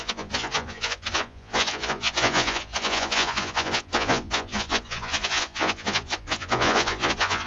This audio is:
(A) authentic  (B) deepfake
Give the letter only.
B